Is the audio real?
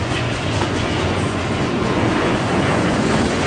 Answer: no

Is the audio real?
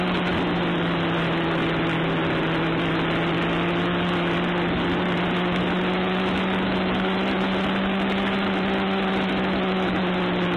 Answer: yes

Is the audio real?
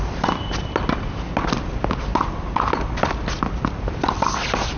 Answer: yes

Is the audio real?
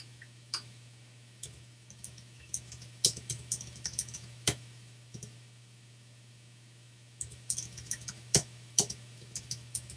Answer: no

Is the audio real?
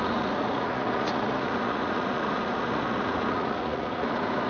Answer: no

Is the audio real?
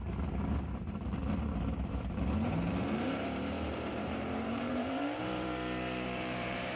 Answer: no